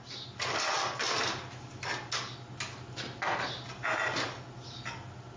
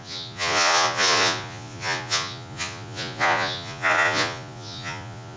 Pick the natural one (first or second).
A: first